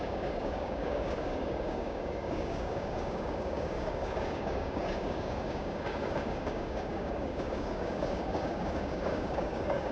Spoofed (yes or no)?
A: yes